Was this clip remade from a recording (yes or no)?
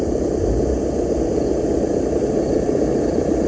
no